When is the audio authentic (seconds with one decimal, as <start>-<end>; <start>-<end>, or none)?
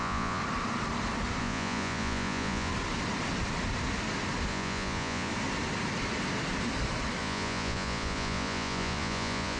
0.4-1.4; 2.7-4.5; 5.3-7.2